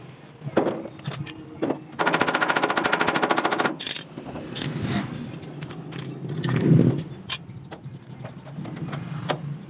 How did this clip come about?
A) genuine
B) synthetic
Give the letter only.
A